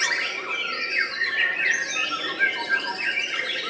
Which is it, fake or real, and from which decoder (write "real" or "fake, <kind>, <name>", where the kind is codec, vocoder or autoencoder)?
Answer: real